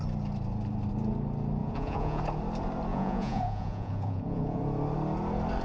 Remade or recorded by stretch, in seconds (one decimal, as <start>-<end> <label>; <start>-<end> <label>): 0.0-1.6 recorded; 1.6-2.2 remade; 2.2-2.9 recorded; 2.9-4.6 remade; 4.6-5.6 recorded